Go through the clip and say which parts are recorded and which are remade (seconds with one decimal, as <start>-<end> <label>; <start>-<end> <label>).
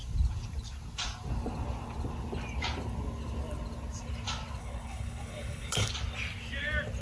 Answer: 0.0-4.6 recorded; 4.6-5.9 remade; 5.9-7.0 recorded